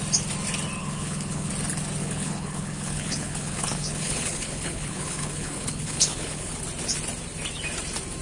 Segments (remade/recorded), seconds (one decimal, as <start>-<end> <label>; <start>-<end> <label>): 0.0-0.8 recorded; 0.8-1.5 remade; 1.5-2.0 recorded; 2.0-6.6 remade; 6.6-8.2 recorded